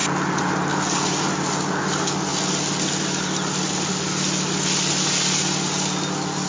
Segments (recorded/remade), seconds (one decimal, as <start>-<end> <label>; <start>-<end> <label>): 0.0-6.5 recorded